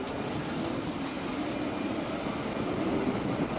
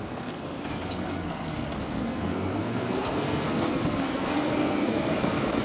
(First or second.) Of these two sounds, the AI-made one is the second